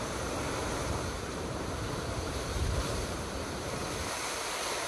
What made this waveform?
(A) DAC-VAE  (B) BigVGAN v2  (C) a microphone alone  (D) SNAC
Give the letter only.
B